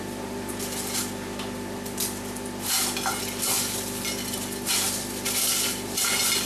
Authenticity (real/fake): real